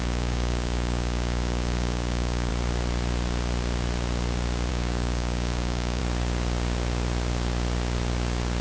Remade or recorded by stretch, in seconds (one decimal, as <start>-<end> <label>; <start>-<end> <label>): 0.0-2.5 remade; 2.5-4.7 recorded; 4.7-6.0 remade; 6.0-8.6 recorded